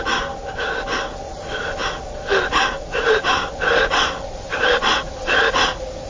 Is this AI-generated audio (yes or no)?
no